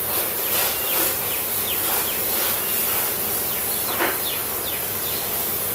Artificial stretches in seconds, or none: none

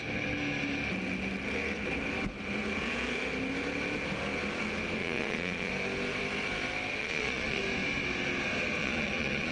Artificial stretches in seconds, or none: 5.0-5.7 (vocoder, Vocos); 7.0-7.6; 8.8-9.5

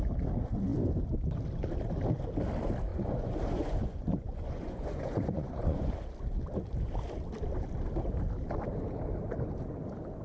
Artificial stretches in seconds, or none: 2.9-5.9 (vocoder, Vocos)

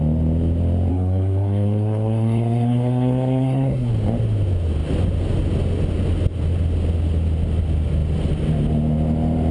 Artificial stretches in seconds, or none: 0.9-3.9 (codec, SNAC)

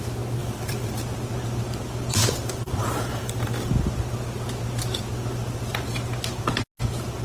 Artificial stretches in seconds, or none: 0.4-1.0 (vocoder, BigVGAN v2); 2.1-3.7

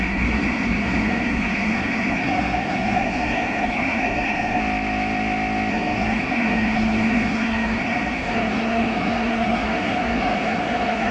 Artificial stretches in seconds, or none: 0.0-4.6 (codec, SNAC); 5.7-11.1

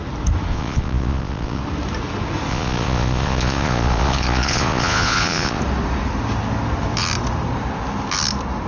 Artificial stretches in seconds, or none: 0.5-1.6 (vocoder, Vocos); 2.5-5.6

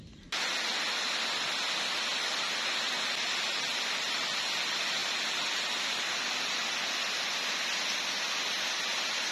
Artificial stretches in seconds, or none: none